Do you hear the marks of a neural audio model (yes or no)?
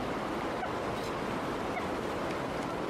no